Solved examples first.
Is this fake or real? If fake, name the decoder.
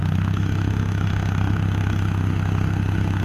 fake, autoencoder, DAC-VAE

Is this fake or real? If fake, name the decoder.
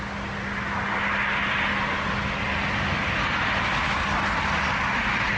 real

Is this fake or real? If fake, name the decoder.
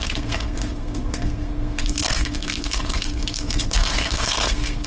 fake, codec, SNAC